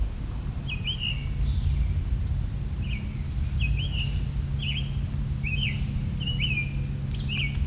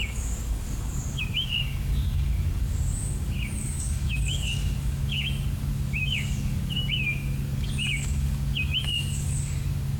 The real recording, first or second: first